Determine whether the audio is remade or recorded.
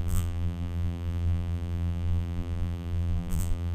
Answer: remade